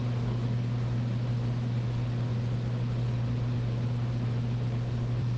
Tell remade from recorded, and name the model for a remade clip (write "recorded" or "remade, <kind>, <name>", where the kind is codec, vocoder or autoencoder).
recorded